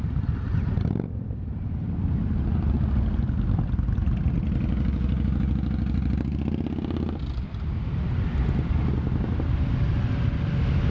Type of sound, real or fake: real